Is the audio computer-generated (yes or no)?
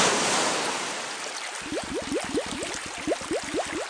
no